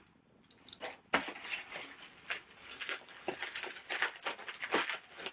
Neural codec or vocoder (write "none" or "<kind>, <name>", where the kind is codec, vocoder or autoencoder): none